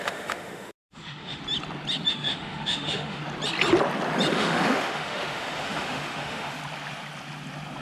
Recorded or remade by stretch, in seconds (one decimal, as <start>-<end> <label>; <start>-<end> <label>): 0.0-1.4 remade; 1.4-2.1 recorded; 2.1-3.2 remade; 3.2-4.3 recorded; 4.3-6.6 remade; 6.6-7.8 recorded